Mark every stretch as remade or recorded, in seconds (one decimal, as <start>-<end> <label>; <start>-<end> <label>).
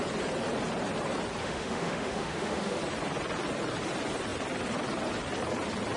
0.0-1.4 recorded; 1.4-2.8 remade; 2.8-6.0 recorded